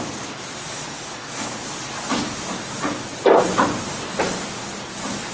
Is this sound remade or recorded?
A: recorded